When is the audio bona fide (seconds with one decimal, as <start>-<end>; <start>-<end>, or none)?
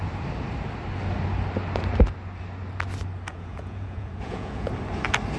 0.0-3.3; 4.7-5.4